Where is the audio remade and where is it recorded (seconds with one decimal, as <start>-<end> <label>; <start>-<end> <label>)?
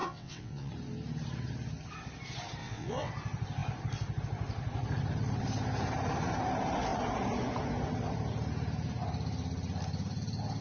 0.0-0.7 remade; 0.7-2.6 recorded; 2.6-3.1 remade; 3.1-10.6 recorded